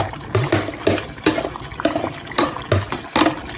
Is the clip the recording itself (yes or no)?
yes